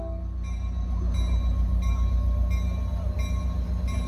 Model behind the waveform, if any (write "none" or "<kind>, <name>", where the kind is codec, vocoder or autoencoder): none